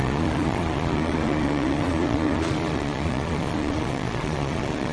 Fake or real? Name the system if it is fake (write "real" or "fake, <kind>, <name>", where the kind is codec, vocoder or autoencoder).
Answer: fake, vocoder, Vocos